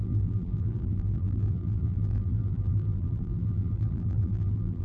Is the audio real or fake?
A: fake